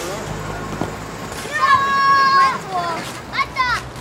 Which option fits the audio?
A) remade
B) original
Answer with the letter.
B